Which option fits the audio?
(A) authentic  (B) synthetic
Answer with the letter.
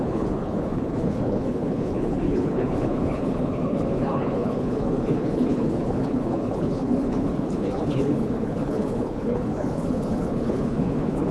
B